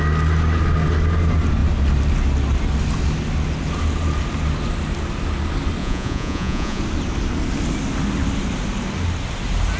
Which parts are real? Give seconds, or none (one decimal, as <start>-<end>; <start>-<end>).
0.0-5.8; 6.8-9.8